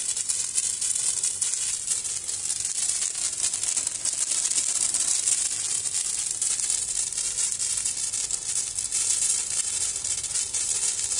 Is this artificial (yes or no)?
no